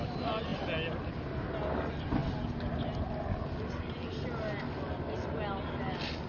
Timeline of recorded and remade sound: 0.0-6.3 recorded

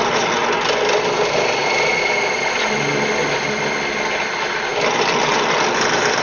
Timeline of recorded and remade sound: 0.0-6.2 recorded

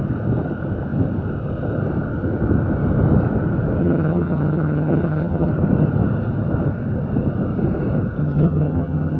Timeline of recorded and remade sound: 0.0-3.8 recorded; 3.8-5.5 remade; 5.5-8.2 recorded; 8.2-9.2 remade

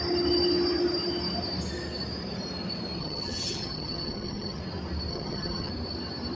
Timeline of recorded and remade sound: 0.0-3.0 recorded; 3.0-4.6 remade; 4.6-5.1 recorded; 5.1-5.7 remade; 5.7-6.3 recorded

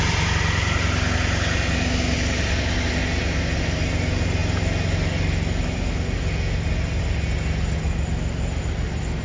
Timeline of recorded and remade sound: 0.0-9.2 recorded

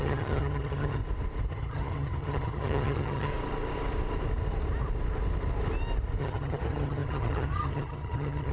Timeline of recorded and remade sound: 0.0-1.0 remade; 1.0-1.5 recorded; 1.5-3.3 remade; 3.3-6.2 recorded; 6.2-8.5 remade